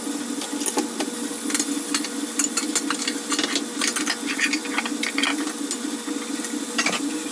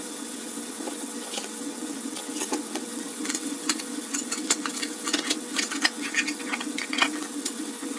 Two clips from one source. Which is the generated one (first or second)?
second